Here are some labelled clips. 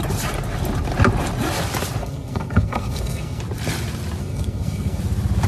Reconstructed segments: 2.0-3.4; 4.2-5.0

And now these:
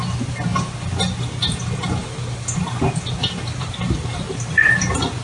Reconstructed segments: none

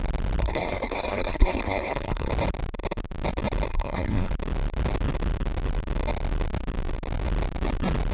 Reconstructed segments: 0.4-2.3; 3.7-4.3

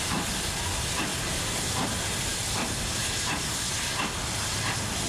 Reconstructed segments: none